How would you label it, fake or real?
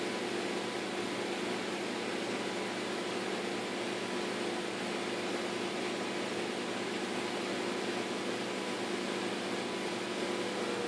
real